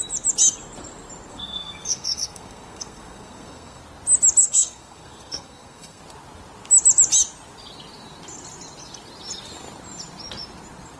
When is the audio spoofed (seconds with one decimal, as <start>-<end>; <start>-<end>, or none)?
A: 1.3-3.8; 4.4-6.0